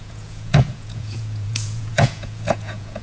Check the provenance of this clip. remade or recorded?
remade